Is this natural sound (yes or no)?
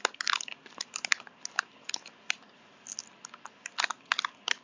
yes